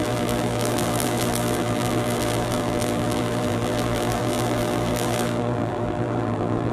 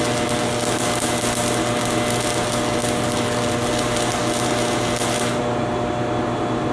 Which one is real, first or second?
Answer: second